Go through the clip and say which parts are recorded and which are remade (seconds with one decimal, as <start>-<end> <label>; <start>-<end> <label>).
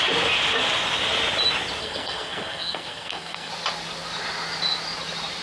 0.0-1.8 recorded; 1.8-3.5 remade; 3.5-5.4 recorded